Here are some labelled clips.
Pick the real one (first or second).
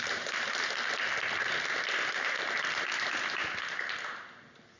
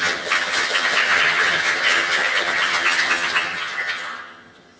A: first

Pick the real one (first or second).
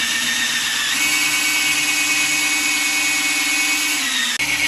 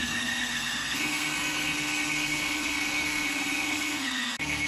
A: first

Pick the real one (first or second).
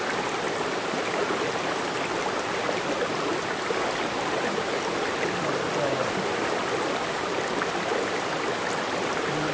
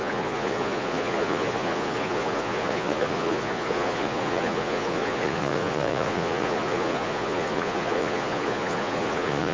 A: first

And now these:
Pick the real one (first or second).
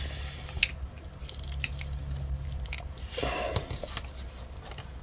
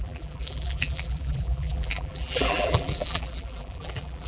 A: first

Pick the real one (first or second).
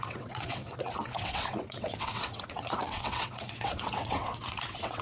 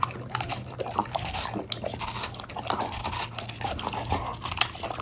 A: second